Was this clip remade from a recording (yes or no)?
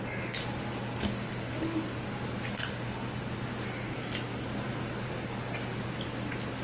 no